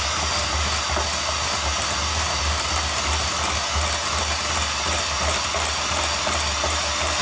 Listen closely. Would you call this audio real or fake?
real